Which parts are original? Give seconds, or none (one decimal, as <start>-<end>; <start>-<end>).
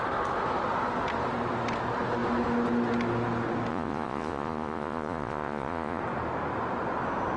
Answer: 0.0-3.7; 6.0-7.4